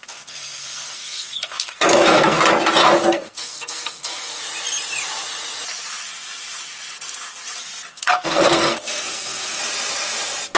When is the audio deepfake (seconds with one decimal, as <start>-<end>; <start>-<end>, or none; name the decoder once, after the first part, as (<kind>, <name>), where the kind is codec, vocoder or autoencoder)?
0.0-2.4 (codec, SNAC); 3.0-4.4; 7.9-9.6